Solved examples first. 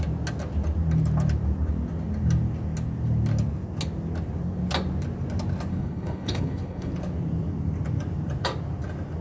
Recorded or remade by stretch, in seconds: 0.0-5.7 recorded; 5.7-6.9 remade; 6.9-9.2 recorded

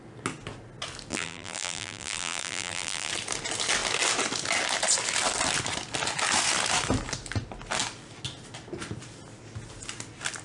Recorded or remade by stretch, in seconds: 0.0-1.1 recorded; 1.1-3.1 remade; 3.1-10.4 recorded

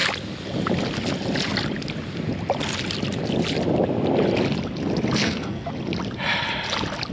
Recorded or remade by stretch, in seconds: 0.0-5.2 recorded; 5.2-5.7 remade; 5.7-7.1 recorded

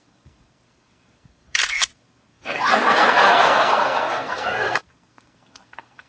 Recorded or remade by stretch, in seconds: 0.0-6.1 remade

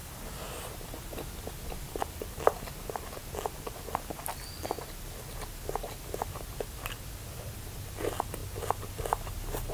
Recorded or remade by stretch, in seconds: 0.0-9.7 recorded